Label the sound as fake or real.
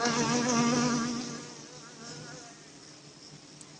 real